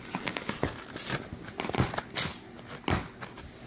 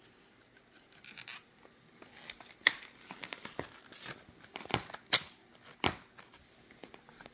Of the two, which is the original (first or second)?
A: first